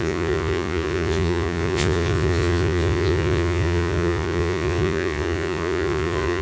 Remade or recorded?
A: remade